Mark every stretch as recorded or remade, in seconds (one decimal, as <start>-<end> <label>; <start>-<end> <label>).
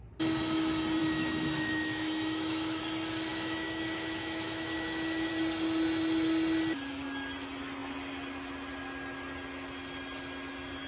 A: 0.0-1.0 recorded; 1.0-2.8 remade; 2.8-3.3 recorded; 3.3-5.3 remade; 5.3-10.9 recorded